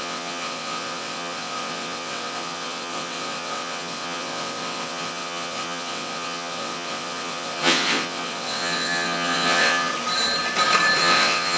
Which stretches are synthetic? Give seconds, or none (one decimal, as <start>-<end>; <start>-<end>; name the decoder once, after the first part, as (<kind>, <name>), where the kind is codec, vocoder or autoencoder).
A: 0.0-9.9 (vocoder, WaveNeXt); 11.0-11.6